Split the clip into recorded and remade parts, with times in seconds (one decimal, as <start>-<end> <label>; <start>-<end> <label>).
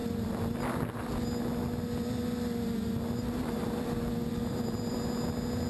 0.0-1.0 remade; 1.0-3.6 recorded; 3.6-5.0 remade; 5.0-5.7 recorded